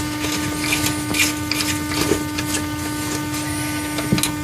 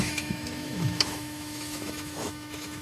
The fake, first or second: second